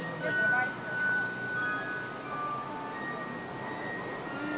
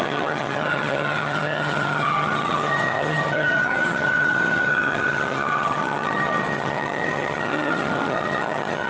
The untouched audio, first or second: first